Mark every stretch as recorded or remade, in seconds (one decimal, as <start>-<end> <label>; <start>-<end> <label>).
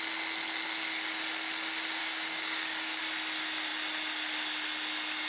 0.0-2.0 recorded; 2.0-3.0 remade; 3.0-5.3 recorded